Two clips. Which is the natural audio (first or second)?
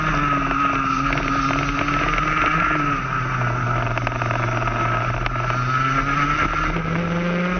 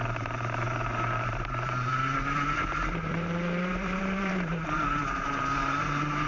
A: first